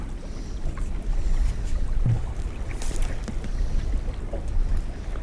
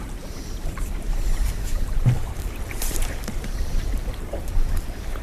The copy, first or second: second